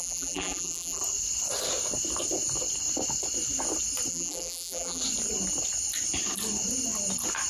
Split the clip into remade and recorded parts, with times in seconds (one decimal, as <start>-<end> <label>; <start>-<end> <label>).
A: 0.0-1.0 remade; 1.0-4.1 recorded; 4.1-5.0 remade; 5.0-7.5 recorded